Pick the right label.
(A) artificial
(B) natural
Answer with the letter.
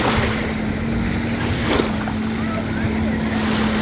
B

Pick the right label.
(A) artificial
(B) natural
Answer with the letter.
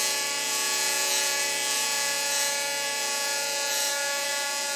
A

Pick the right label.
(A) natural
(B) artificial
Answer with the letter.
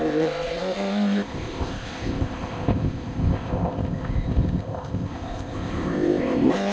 B